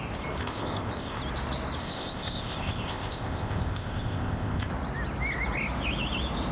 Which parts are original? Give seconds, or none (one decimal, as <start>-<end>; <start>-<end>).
0.0-0.4; 1.2-1.8; 4.7-6.5